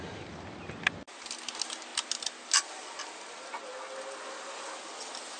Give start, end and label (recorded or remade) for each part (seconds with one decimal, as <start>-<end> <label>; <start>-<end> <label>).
0.0-5.4 recorded